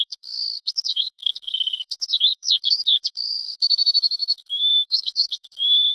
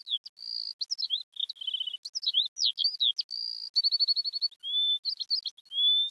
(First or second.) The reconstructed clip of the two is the first